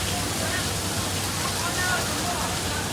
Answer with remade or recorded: recorded